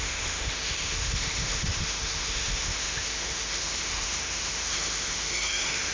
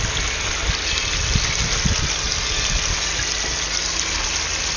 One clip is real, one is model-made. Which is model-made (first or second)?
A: first